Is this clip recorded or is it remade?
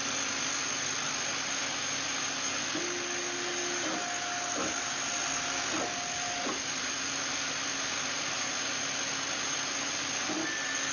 recorded